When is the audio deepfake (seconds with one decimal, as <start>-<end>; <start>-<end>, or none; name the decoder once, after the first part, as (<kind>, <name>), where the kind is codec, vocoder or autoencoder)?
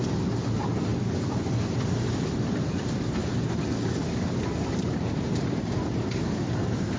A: 0.9-3.0 (vocoder, BigVGAN v2)